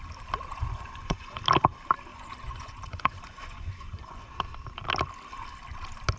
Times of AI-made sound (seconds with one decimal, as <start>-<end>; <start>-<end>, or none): 0.5-1.4; 2.1-4.3